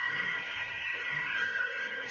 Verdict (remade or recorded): remade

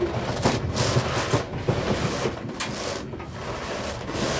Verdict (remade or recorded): recorded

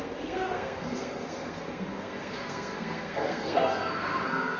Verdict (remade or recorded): remade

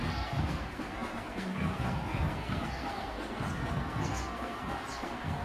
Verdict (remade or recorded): remade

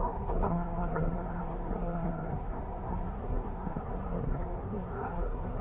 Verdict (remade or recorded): remade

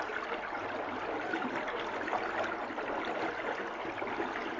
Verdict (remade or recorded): recorded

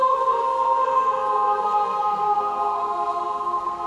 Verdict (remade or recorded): remade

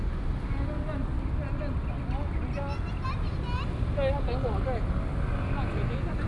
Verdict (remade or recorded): recorded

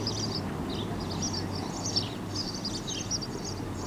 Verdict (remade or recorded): recorded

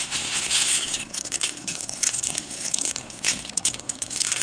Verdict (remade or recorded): remade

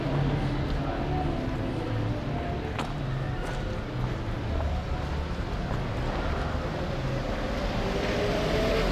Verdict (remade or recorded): recorded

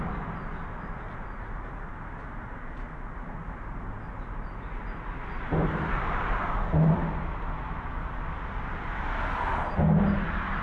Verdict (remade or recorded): recorded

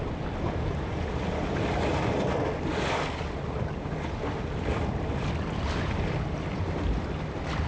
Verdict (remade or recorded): recorded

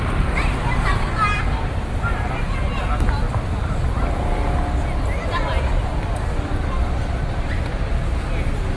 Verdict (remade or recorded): recorded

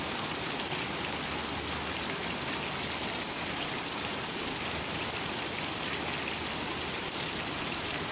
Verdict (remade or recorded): recorded